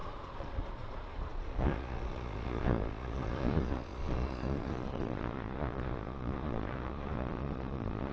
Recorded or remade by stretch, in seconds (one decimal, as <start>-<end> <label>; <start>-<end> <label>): 0.0-8.1 remade